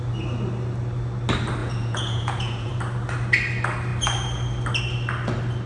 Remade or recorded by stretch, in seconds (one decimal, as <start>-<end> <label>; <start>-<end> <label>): 0.0-1.6 recorded; 1.6-2.7 remade; 2.7-5.7 recorded